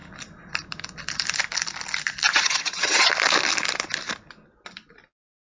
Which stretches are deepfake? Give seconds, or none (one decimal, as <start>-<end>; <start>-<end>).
2.3-3.1

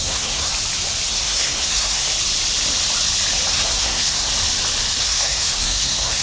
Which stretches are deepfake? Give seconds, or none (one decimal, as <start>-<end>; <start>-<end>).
0.0-0.5; 1.1-2.1; 3.5-4.3; 5.0-6.2

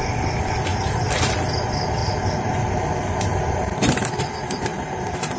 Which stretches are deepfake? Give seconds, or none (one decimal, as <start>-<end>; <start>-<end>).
0.7-1.3; 2.0-4.1; 4.7-5.4

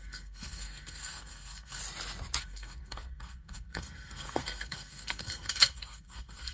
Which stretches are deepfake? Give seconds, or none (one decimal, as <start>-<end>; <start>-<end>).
0.0-1.8; 2.4-6.5

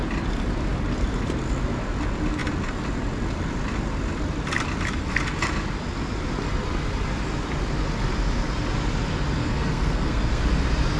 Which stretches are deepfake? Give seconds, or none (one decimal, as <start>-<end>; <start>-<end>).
9.4-10.4

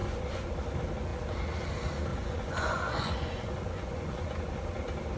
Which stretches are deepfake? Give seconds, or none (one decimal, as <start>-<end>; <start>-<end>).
0.0-0.5; 2.1-4.5